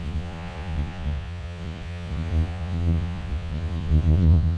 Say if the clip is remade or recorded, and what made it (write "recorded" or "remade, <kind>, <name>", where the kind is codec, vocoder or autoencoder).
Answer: remade, vocoder, Vocos